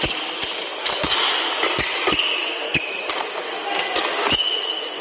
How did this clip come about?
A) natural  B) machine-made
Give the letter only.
A